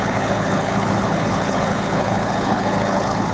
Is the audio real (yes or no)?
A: no